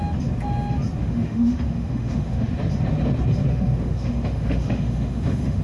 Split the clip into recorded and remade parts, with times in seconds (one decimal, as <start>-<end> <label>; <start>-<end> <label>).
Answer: 0.0-1.0 recorded; 1.0-2.5 remade; 2.5-3.5 recorded; 3.5-5.6 remade